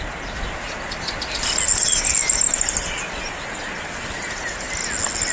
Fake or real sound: real